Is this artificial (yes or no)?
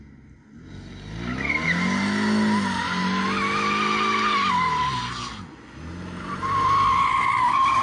no